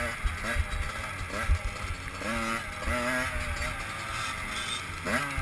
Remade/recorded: recorded